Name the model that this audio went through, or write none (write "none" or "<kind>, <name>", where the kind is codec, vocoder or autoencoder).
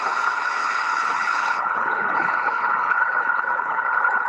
codec, HILCodec